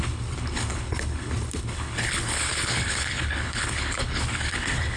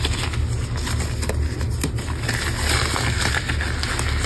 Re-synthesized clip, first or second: first